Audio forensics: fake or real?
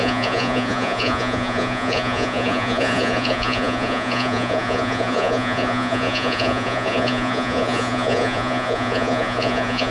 fake